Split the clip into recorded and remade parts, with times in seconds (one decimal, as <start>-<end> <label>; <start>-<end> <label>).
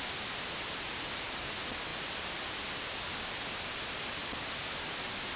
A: 0.0-1.9 recorded; 1.9-3.3 remade; 3.3-5.4 recorded